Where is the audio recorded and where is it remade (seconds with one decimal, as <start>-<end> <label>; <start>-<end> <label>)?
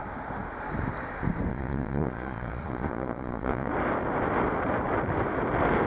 0.0-1.5 recorded; 1.5-3.7 remade; 3.7-5.9 recorded